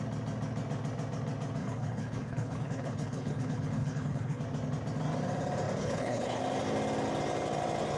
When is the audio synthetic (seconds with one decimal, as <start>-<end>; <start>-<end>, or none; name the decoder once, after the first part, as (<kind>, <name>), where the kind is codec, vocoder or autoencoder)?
1.6-4.4 (codec, HILCodec); 5.8-6.4